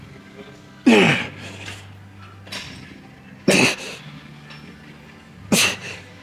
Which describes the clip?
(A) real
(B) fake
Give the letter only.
A